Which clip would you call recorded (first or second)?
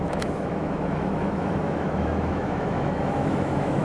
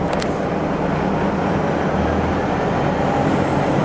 second